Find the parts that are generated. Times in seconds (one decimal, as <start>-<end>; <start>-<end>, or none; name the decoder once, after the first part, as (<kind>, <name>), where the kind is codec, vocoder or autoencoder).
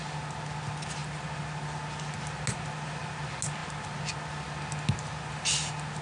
none